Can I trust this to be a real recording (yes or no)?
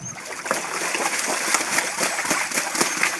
yes